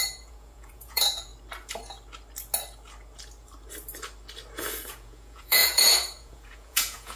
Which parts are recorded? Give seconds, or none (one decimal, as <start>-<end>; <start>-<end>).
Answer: 1.3-4.9